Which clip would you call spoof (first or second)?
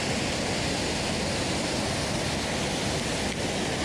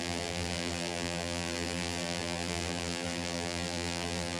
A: second